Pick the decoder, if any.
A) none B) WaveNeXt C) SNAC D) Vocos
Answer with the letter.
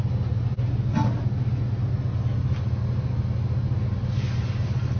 A